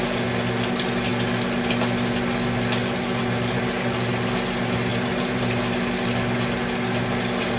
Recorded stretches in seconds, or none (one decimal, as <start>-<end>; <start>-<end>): 0.0-4.9; 5.6-7.6